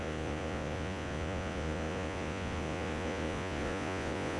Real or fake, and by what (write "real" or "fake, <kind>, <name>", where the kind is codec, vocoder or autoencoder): fake, vocoder, Vocos